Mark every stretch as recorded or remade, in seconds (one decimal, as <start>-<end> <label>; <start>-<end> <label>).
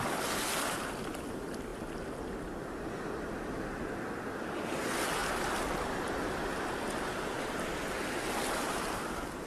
0.0-9.5 recorded